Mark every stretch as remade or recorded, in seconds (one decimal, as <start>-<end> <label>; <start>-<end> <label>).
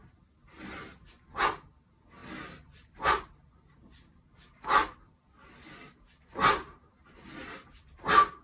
0.0-8.4 recorded